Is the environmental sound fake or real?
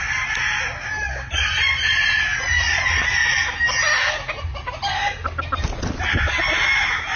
real